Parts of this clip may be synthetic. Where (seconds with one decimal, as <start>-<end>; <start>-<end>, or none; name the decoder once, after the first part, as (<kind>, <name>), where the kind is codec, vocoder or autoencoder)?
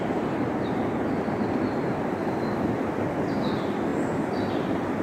none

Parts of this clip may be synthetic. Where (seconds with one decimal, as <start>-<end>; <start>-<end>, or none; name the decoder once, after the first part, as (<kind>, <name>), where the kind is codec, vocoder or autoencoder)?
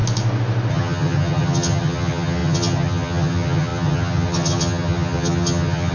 0.7-5.9 (vocoder, HiFi-GAN)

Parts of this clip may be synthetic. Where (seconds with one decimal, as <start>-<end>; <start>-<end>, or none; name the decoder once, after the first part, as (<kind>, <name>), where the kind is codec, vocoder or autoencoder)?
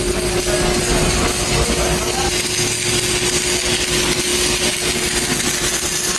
none